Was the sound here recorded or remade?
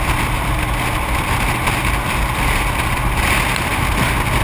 recorded